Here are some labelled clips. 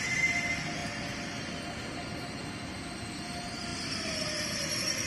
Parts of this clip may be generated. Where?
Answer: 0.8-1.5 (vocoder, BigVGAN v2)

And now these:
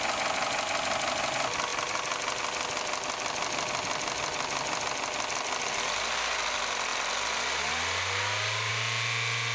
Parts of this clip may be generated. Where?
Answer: none

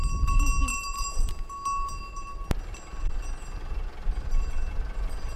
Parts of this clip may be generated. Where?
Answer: 0.7-1.3 (vocoder, BigVGAN v2)

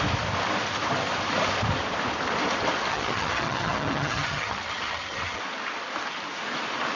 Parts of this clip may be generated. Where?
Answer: 2.9-5.4 (vocoder, HiFi-GAN)

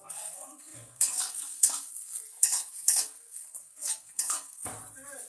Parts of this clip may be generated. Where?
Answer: 0.0-4.7 (codec, SNAC)